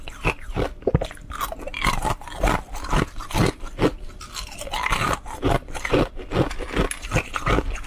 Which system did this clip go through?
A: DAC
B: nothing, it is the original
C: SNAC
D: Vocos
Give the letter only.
B